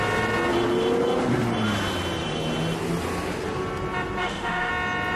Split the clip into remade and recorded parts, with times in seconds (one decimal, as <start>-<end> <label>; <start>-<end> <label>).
0.0-4.2 recorded; 4.2-4.7 remade; 4.7-5.2 recorded